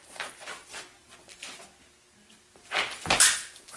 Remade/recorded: recorded